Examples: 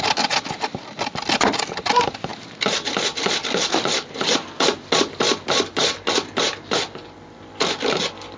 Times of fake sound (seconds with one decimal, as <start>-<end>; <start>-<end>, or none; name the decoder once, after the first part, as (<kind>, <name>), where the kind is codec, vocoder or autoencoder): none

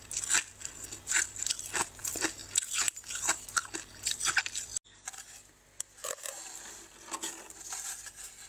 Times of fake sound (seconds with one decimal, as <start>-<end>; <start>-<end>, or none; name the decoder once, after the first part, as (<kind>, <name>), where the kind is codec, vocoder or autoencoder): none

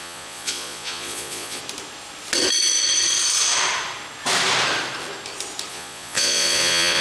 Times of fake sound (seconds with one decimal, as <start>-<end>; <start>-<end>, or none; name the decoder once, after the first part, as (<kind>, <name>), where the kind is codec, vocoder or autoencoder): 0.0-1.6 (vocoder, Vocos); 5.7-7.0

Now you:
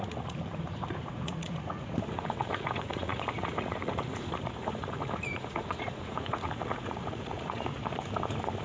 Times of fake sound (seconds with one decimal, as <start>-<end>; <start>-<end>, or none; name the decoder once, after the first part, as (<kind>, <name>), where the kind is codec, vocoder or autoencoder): 0.0-7.8 (vocoder, Vocos)